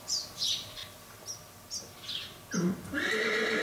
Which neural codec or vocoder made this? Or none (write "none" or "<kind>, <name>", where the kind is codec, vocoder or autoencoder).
none